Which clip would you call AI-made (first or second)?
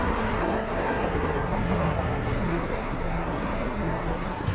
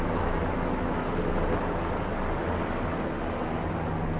first